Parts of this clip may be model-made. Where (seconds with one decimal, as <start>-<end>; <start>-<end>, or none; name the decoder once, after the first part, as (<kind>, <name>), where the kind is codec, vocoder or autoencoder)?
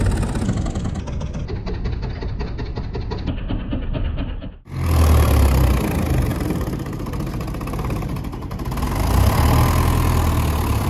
6.3-8.6 (vocoder, BigVGAN v2)